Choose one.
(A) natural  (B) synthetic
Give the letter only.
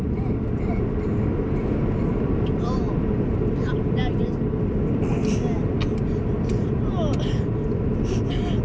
A